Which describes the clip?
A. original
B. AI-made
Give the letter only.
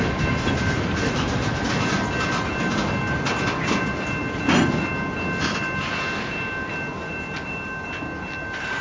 A